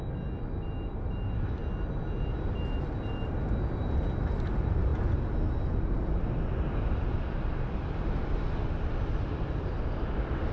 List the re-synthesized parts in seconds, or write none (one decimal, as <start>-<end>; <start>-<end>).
none